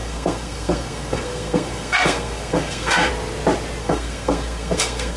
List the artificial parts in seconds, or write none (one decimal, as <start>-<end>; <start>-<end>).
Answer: 0.0-3.1; 3.8-5.2